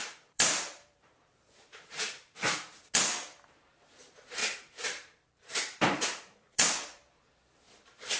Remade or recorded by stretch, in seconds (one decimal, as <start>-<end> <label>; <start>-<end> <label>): 0.0-2.9 remade; 2.9-4.4 recorded; 4.4-6.7 remade; 6.7-8.2 recorded